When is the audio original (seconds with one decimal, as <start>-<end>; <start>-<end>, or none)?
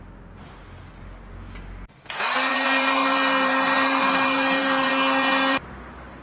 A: 0.0-2.5; 4.9-6.2